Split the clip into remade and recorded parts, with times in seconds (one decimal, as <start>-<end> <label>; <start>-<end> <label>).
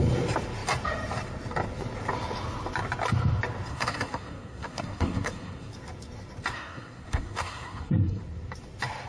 0.0-3.7 recorded; 3.7-5.7 remade; 5.7-6.5 recorded; 6.5-8.2 remade; 8.2-9.1 recorded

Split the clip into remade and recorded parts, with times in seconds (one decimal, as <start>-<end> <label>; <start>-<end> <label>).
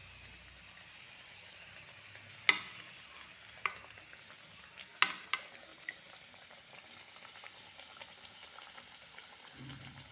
0.0-5.7 recorded; 5.7-6.7 remade; 6.7-10.1 recorded